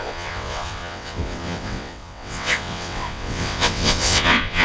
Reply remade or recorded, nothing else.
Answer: remade